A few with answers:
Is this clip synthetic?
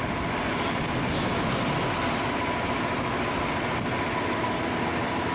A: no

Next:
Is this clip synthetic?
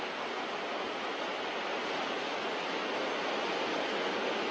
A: no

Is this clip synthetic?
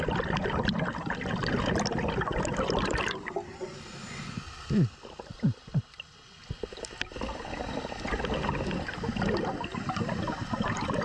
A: no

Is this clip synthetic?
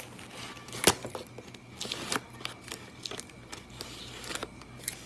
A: no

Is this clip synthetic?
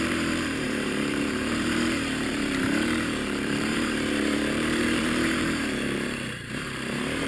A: yes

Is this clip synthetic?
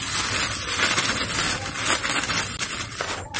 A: no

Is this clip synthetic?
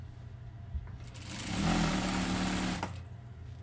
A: no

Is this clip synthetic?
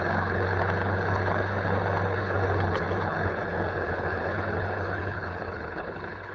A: yes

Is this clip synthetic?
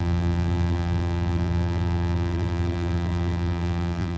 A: yes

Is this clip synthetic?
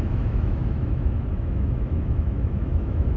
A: yes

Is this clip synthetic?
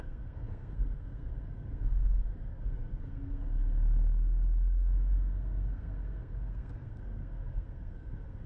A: yes